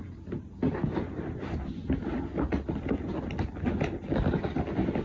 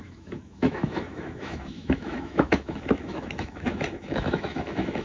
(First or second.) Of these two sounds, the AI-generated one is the second